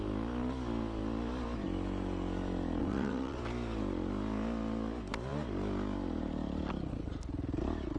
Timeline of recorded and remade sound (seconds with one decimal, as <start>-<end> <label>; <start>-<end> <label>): 0.0-2.8 recorded; 2.8-3.4 remade; 3.4-8.0 recorded